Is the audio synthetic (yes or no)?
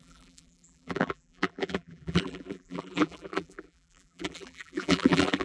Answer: yes